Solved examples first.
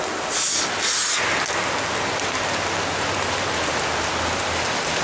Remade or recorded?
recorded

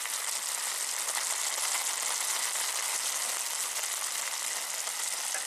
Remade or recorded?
recorded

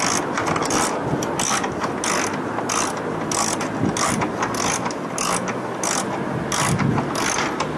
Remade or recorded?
recorded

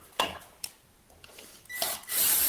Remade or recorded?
remade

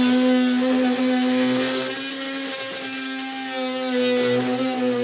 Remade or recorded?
recorded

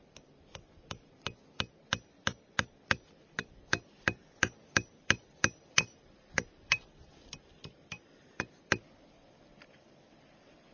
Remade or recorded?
remade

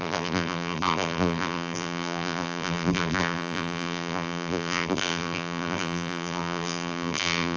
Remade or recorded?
remade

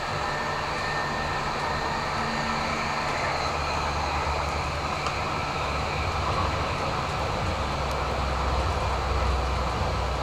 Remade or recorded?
recorded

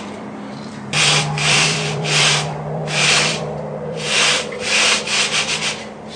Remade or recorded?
remade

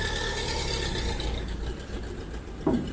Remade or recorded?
recorded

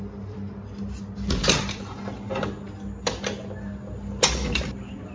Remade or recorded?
recorded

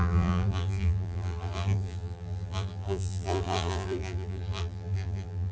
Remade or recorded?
remade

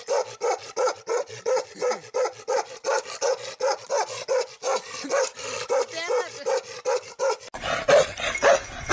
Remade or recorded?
recorded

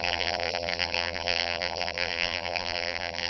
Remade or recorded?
remade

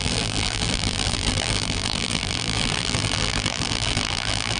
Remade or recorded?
remade